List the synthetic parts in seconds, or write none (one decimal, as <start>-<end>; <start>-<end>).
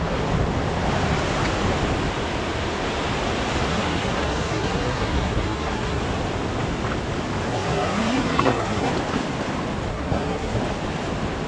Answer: 3.7-6.0; 7.5-8.9; 9.9-10.6